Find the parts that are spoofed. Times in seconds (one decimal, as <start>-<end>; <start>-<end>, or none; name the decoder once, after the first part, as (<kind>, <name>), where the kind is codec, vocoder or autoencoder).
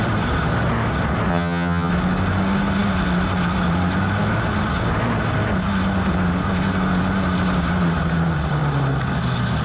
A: 1.3-1.9 (vocoder, HiFi-GAN)